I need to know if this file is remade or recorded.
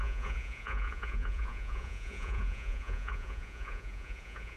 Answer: remade